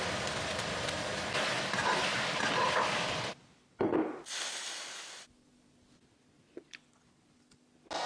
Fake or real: real